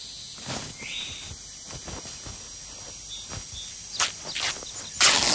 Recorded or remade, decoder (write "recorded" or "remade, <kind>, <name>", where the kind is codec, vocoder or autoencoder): recorded